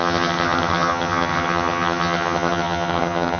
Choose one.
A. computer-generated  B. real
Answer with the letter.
A